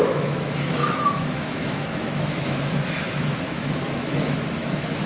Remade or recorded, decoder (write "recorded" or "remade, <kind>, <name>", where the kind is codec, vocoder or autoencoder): remade, autoencoder, DAC-VAE